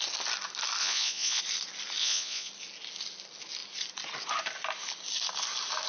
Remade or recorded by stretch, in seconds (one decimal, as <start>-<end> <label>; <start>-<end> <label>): 0.0-0.8 recorded; 0.8-1.4 remade; 1.4-2.0 recorded; 2.0-2.5 remade; 2.5-5.9 recorded